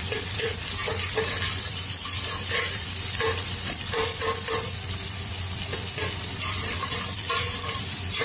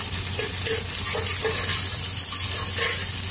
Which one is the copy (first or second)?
first